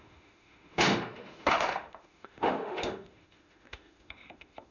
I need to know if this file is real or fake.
fake